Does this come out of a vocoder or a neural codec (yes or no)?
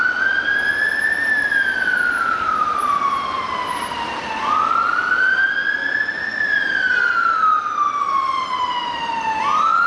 no